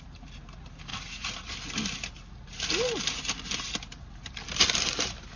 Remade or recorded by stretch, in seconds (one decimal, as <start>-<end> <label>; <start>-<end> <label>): 0.0-5.4 recorded